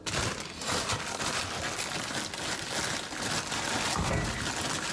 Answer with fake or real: real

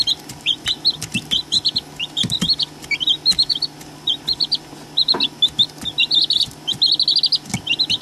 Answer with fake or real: real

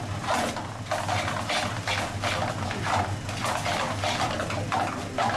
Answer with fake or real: real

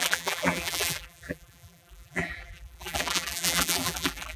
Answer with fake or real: fake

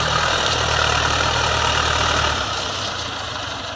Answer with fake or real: fake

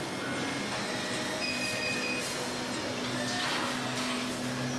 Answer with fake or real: real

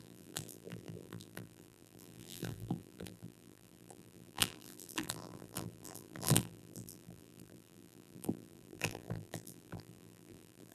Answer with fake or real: fake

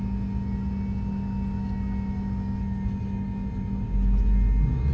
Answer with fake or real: real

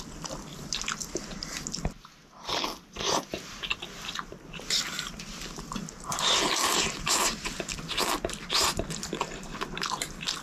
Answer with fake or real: real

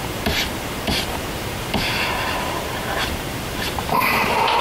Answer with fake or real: fake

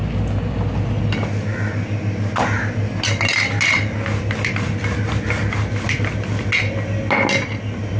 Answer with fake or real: real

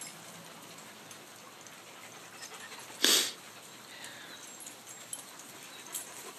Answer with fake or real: real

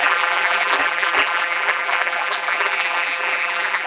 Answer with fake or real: fake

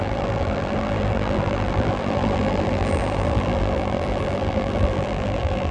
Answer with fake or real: fake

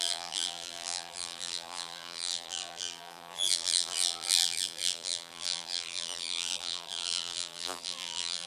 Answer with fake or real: fake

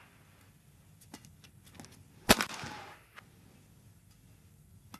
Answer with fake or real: real